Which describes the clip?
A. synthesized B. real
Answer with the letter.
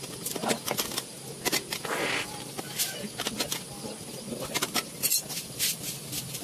B